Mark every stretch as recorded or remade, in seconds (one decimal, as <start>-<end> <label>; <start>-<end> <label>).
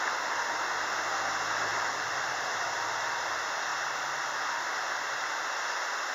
0.0-1.7 recorded; 1.7-2.5 remade; 2.5-3.7 recorded; 3.7-4.4 remade; 4.4-6.1 recorded